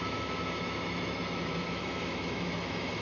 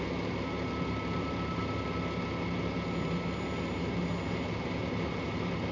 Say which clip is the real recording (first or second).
second